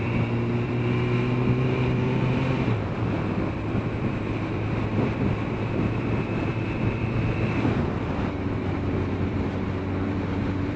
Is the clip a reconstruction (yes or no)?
yes